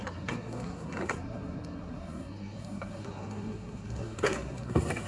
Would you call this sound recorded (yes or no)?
no